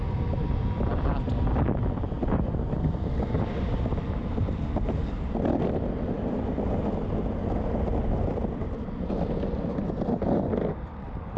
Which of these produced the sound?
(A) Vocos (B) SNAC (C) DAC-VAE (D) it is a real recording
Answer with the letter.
D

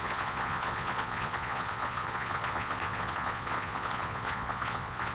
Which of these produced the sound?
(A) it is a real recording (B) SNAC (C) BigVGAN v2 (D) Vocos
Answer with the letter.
D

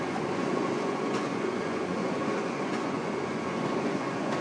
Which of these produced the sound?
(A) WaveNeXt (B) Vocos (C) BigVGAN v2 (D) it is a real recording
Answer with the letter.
B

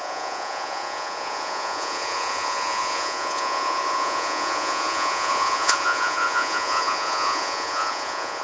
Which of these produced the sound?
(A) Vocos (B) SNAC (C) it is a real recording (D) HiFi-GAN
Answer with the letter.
A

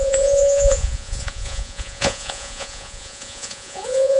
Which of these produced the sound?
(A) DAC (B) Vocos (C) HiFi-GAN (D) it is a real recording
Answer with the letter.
B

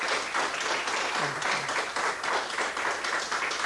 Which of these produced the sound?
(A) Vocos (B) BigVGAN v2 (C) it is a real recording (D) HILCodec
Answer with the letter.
C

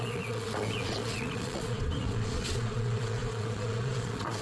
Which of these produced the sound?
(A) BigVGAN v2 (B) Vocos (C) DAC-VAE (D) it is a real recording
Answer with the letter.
B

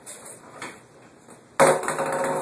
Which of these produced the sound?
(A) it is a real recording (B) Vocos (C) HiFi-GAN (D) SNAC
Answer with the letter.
A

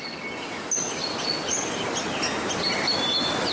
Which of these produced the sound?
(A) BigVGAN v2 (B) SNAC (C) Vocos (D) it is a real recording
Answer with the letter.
D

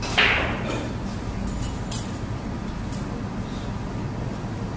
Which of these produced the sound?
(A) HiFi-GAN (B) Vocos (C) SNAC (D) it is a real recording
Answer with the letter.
D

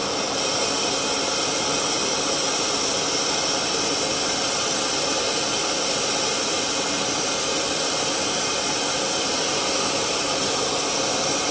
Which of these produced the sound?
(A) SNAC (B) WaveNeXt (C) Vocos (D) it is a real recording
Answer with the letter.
D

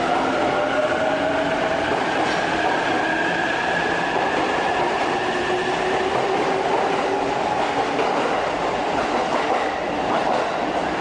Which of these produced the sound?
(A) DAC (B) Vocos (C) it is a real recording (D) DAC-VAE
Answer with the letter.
C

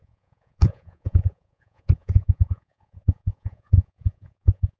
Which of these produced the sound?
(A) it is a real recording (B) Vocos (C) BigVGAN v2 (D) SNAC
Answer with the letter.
B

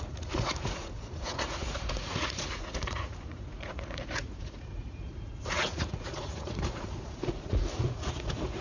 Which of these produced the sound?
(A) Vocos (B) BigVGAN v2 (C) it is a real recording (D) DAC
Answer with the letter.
A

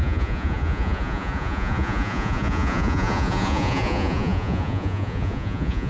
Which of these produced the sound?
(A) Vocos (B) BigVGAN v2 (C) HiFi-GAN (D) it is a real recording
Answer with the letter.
A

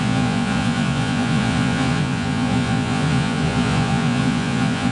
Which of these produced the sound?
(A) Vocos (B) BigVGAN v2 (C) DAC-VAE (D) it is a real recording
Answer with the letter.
A